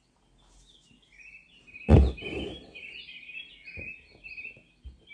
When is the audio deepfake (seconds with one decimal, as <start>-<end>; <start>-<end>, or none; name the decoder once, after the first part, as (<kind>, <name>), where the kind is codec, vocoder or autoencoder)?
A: 1.3-3.5 (vocoder, BigVGAN v2)